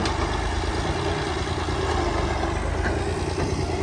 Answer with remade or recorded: recorded